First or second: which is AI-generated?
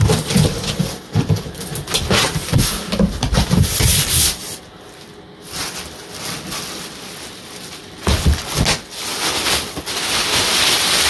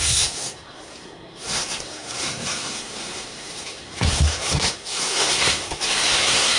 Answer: second